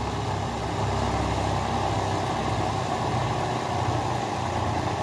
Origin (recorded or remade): recorded